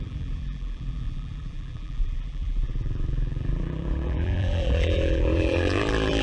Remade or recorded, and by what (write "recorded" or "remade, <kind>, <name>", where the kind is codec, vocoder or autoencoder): remade, vocoder, BigVGAN v2